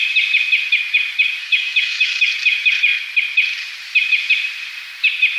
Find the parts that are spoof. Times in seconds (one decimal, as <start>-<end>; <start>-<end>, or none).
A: 1.4-2.3